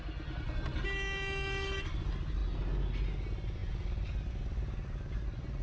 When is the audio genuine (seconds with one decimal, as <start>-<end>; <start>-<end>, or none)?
0.0-5.6